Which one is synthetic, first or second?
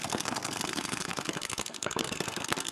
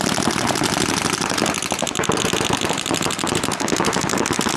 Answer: first